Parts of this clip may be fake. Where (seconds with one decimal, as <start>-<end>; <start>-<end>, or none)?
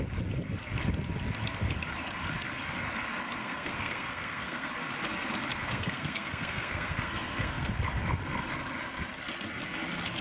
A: 3.4-4.7; 5.6-7.7